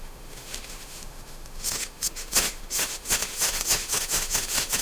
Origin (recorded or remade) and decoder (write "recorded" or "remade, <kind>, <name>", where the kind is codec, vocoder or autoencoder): remade, autoencoder, DAC-VAE